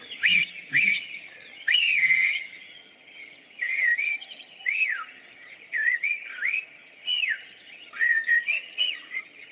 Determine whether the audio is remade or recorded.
remade